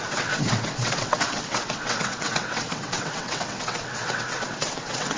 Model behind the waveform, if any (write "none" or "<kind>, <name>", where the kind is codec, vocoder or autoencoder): vocoder, WaveNeXt